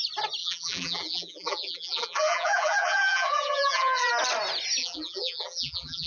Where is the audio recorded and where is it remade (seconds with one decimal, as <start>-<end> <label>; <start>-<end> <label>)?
0.0-0.4 recorded; 0.4-4.1 remade; 4.1-4.8 recorded; 4.8-6.1 remade